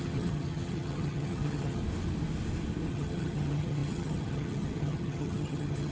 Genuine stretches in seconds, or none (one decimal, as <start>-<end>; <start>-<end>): 1.8-2.9